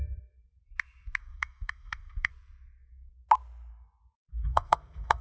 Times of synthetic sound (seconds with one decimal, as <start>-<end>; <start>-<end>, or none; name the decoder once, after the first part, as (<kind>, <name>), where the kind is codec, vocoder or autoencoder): 1.2-2.3 (codec, SNAC); 4.3-5.2